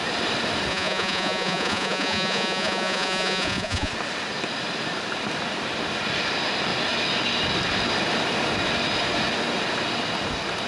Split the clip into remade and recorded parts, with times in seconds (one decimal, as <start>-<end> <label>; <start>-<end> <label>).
0.0-0.7 recorded; 0.7-3.9 remade; 3.9-10.7 recorded